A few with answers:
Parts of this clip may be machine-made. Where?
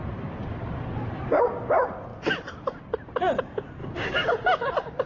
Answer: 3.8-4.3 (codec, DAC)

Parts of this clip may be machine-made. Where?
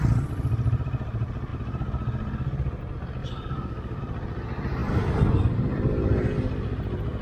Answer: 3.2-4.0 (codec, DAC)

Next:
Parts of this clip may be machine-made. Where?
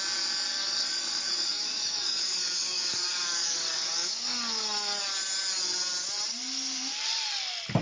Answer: 0.5-5.0 (codec, DAC)